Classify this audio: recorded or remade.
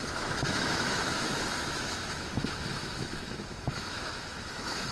remade